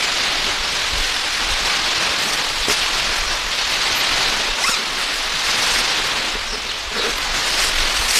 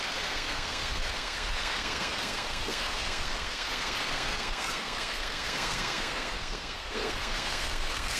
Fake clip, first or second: second